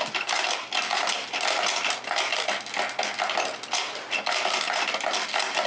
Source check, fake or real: real